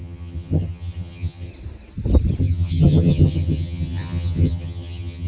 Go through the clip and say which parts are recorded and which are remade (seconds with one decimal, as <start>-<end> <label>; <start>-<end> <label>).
0.0-1.5 remade; 1.5-2.4 recorded; 2.4-5.3 remade